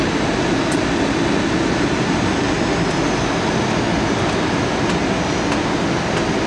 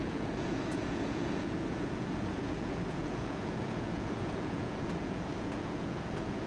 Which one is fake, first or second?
second